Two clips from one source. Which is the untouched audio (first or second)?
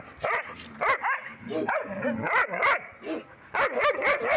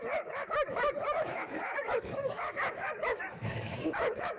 first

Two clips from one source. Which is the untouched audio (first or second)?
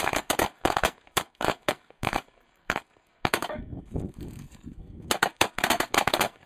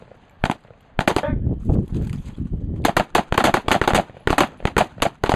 second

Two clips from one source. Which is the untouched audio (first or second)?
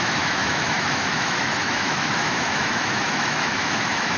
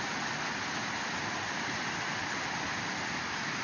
second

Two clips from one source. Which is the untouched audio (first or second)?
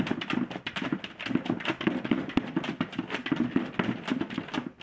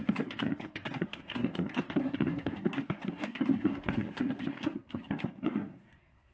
first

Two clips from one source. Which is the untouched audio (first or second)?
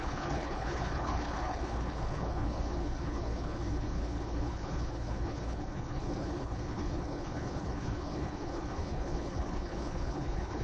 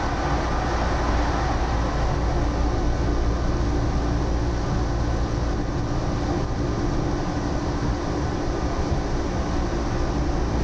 second